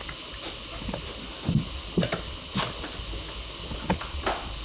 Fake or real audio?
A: real